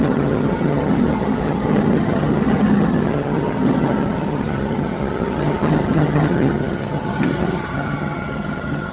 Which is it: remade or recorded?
remade